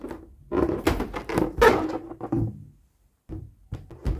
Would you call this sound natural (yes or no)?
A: yes